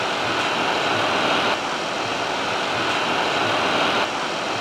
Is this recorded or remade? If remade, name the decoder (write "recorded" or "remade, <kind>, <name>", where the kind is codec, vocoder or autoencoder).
recorded